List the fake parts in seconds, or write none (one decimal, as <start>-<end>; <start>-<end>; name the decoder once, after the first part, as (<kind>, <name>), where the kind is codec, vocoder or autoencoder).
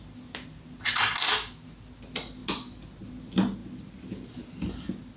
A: none